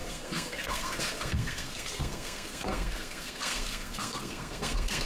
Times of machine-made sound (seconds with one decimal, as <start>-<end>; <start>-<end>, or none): 0.0-5.1